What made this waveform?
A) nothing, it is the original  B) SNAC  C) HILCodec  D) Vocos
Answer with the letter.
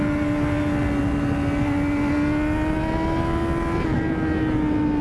A